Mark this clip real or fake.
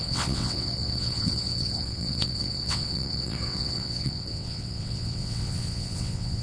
fake